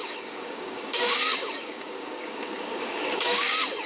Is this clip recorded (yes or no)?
no